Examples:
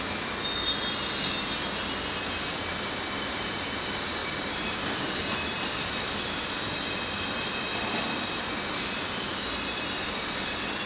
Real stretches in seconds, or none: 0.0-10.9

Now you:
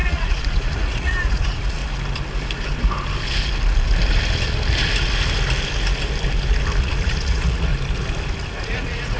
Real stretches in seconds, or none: 1.8-6.8; 7.7-8.6

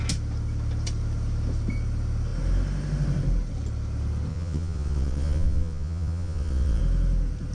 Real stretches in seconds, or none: 0.0-4.3; 6.8-7.5